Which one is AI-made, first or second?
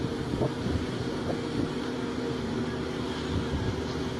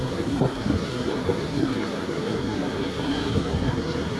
second